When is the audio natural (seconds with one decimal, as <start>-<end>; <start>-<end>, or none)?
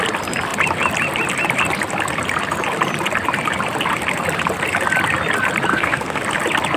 0.0-5.7; 6.2-6.8